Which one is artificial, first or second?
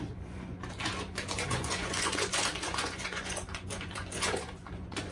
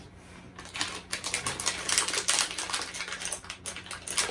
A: first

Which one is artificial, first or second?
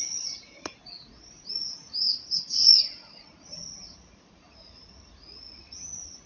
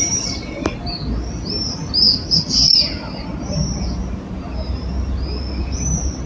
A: first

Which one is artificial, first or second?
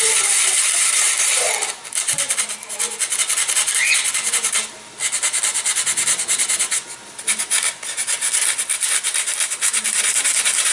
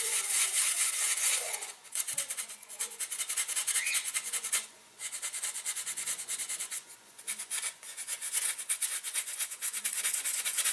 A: second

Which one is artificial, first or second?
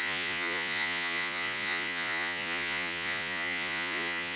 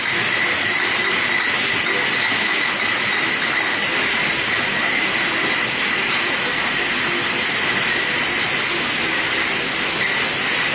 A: first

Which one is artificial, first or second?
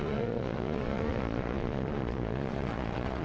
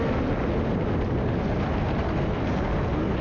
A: first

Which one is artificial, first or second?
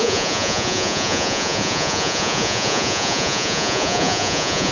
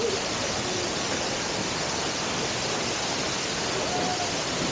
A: first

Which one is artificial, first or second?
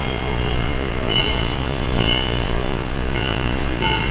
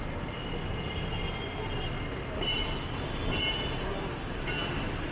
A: first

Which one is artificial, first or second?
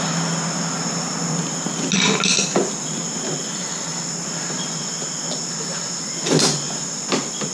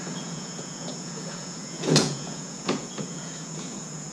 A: second